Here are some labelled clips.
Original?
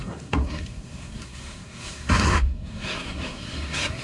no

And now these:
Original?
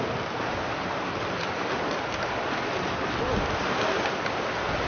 yes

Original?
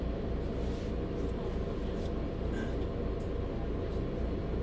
yes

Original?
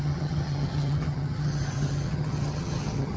no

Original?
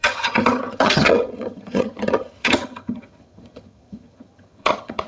no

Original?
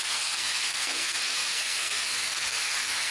no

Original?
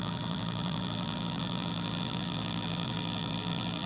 no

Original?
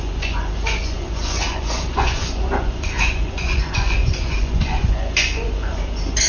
no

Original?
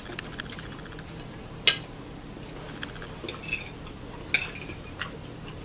yes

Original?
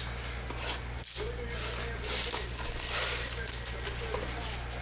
yes